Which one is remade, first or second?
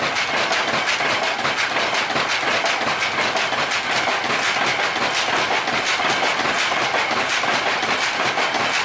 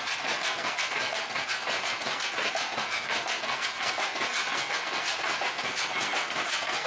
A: second